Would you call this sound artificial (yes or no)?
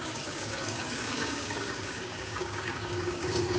yes